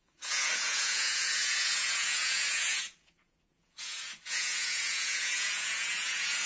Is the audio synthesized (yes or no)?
yes